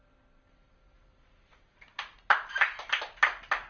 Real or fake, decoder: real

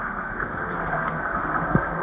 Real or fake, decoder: fake, codec, SNAC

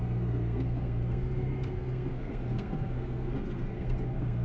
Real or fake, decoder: fake, codec, SNAC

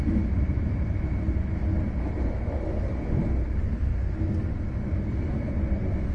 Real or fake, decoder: real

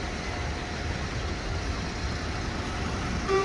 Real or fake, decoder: real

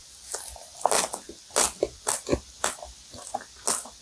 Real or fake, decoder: real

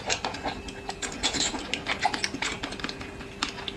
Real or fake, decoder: real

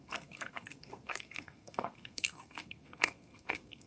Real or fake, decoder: fake, codec, SNAC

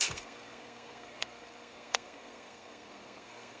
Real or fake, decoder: fake, codec, SNAC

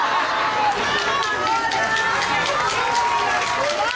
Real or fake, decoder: real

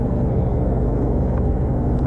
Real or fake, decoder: fake, codec, SNAC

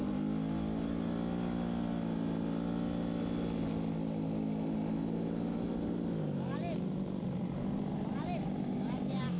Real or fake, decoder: real